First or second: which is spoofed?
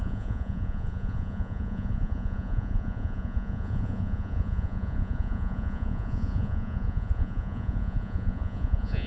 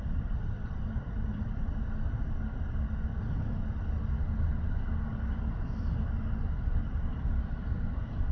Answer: first